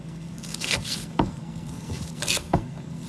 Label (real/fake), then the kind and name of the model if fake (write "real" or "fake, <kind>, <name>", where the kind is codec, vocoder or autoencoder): fake, codec, SNAC